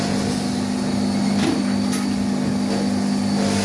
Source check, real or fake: real